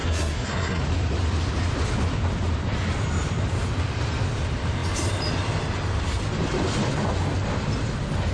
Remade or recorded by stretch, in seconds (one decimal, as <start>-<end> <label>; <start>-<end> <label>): 0.0-0.8 remade; 0.8-8.3 recorded